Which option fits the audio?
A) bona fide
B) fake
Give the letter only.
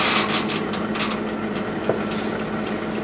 A